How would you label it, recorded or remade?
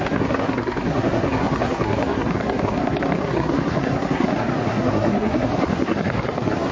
remade